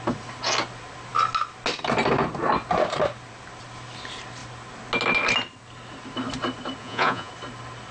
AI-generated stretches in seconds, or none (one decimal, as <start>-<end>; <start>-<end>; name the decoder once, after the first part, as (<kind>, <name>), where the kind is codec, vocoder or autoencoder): 6.8-7.3 (vocoder, Vocos)